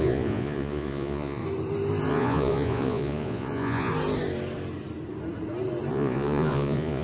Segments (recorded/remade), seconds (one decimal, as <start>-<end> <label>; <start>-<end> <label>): 0.0-1.4 remade; 1.4-2.1 recorded; 2.1-3.9 remade; 3.9-5.9 recorded; 5.9-7.0 remade